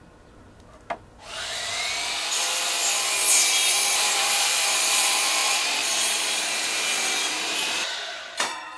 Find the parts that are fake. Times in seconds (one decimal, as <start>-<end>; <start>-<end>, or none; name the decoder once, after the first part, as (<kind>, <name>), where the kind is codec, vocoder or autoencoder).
3.7-8.8 (vocoder, BigVGAN v2)